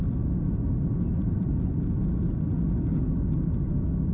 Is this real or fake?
real